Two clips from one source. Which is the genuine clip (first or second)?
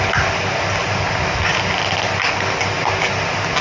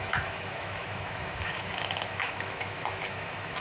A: first